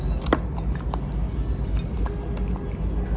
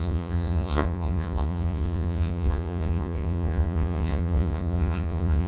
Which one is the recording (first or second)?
first